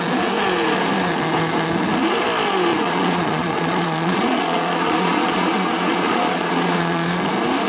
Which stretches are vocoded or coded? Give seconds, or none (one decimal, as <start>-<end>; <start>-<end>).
2.7-7.2